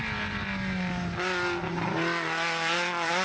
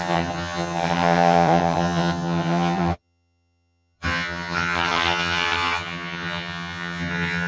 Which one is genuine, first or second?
first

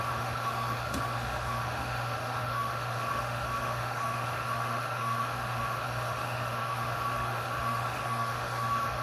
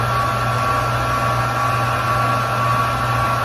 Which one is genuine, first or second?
second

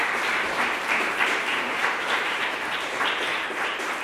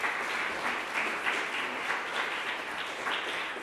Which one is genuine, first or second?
second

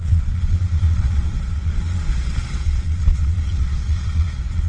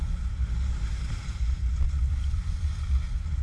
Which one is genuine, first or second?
second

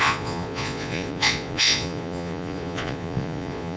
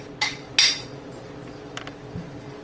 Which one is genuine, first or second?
second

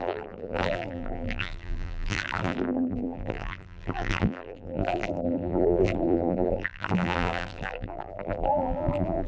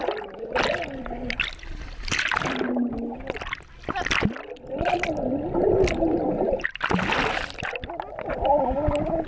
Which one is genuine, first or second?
second